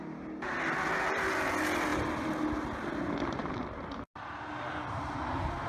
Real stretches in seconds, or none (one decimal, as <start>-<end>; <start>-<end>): 0.0-5.7